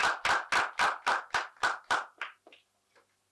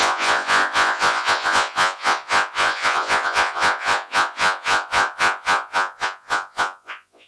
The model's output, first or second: second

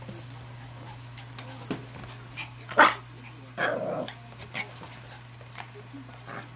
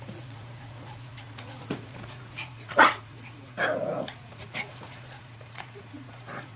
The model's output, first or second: second